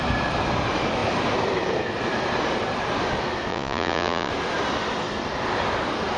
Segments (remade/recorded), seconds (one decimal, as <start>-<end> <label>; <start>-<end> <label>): 0.0-3.5 recorded; 3.5-4.3 remade; 4.3-6.2 recorded